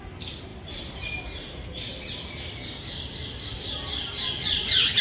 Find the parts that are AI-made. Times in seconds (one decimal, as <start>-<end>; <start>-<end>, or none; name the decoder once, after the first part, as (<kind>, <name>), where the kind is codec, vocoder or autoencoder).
none